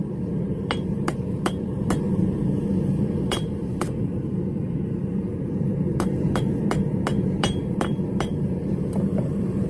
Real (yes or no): no